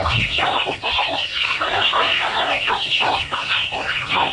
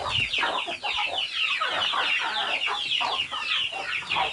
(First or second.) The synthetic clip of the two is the first